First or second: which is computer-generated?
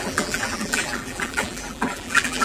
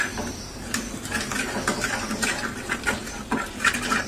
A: first